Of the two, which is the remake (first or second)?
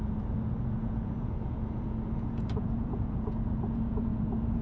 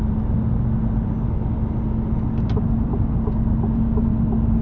first